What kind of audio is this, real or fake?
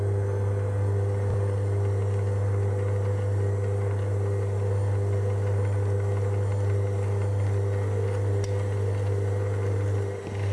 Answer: real